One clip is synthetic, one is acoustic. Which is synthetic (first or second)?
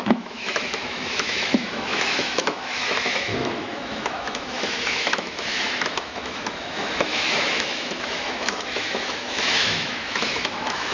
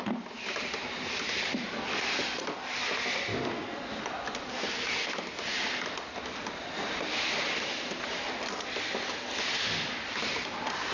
first